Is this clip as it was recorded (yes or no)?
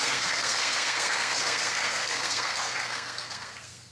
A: no